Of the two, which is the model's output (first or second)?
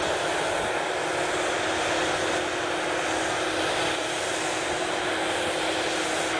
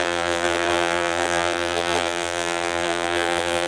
second